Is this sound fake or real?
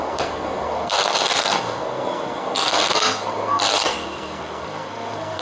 fake